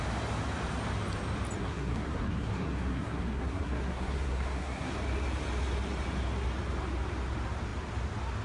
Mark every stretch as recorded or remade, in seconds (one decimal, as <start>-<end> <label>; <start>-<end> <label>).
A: 0.0-1.6 recorded; 1.6-4.9 remade; 4.9-8.4 recorded